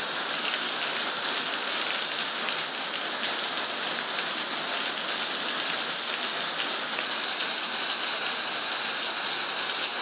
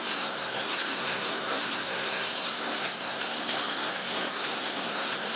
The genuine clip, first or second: first